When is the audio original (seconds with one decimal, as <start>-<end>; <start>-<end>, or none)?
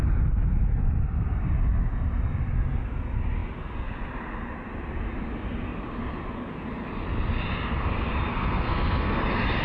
0.0-8.3; 9.2-9.6